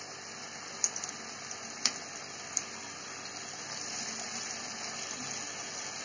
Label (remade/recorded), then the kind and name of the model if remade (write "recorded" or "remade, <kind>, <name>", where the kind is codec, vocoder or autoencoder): recorded